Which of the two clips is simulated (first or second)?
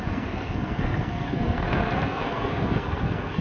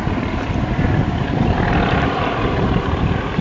first